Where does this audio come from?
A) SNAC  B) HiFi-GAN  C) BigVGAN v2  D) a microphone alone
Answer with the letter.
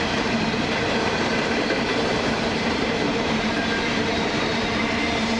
C